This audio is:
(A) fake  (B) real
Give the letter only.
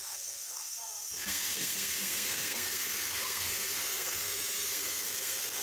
A